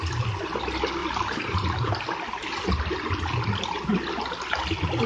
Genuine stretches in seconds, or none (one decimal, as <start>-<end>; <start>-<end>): 0.0-1.0; 2.0-5.1